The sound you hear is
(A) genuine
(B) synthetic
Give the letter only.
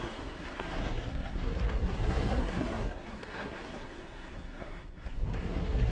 B